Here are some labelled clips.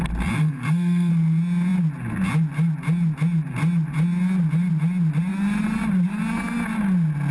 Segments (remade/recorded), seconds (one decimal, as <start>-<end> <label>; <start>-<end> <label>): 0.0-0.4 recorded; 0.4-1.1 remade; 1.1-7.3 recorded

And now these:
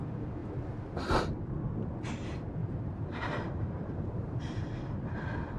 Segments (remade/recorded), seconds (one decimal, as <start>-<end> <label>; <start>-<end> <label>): 0.0-2.6 recorded; 2.6-4.4 remade; 4.4-5.6 recorded

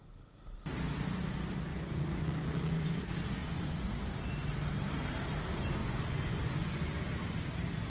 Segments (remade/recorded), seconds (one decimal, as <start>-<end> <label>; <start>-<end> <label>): 0.0-1.7 recorded; 1.7-3.0 remade; 3.0-3.4 recorded; 3.4-3.9 remade; 3.9-5.8 recorded; 5.8-7.0 remade; 7.0-7.9 recorded